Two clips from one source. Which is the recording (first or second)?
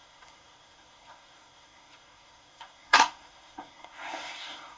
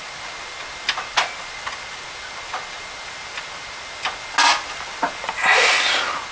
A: second